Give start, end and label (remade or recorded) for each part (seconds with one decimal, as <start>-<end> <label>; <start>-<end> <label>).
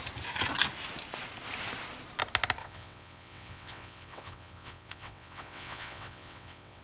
0.0-2.6 recorded; 2.6-6.8 remade